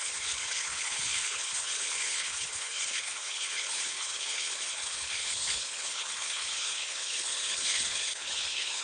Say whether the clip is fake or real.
fake